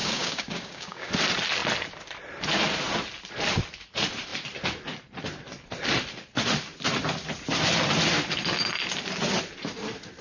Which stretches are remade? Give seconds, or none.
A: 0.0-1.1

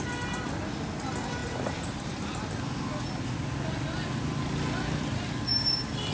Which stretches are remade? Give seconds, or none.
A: none

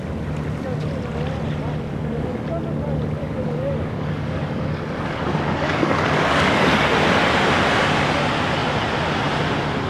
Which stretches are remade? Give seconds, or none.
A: 1.9-2.4; 3.2-6.9

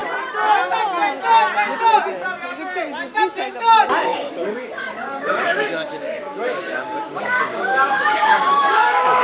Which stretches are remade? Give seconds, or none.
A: 4.0-9.2

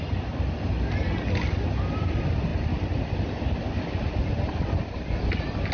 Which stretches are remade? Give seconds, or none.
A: none

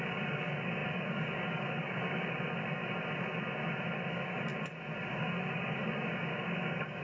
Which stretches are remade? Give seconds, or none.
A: 0.0-2.8; 4.1-4.5; 5.1-7.0

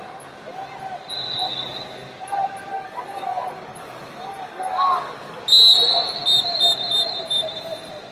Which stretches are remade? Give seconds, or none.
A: 2.7-5.4